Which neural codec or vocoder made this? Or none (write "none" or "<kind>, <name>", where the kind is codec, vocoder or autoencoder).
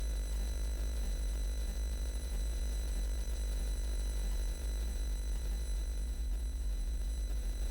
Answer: vocoder, Vocos